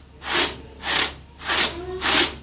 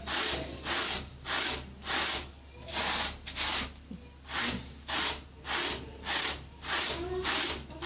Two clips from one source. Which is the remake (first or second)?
second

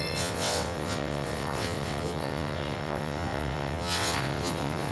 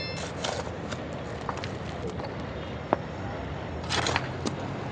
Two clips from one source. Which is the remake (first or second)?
first